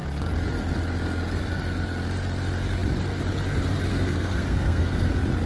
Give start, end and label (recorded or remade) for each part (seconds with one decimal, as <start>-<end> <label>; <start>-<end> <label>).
0.0-3.9 recorded; 3.9-5.1 remade; 5.1-5.5 recorded